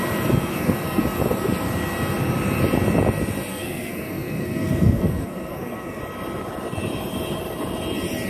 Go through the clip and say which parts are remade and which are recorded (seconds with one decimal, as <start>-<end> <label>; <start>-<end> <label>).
0.0-0.5 recorded; 0.5-1.0 remade; 1.0-3.5 recorded; 3.5-6.0 remade; 6.0-8.3 recorded